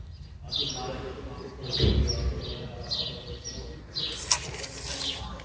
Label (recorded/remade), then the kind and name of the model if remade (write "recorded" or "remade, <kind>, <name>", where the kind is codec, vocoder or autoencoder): recorded